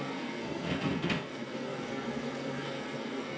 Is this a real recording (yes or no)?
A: no